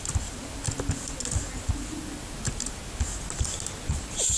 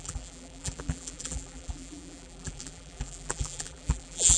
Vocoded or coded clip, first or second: second